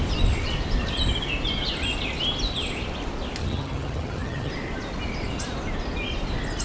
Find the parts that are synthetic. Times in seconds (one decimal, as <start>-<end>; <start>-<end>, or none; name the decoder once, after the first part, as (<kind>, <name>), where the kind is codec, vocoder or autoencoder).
3.4-4.5 (vocoder, HiFi-GAN)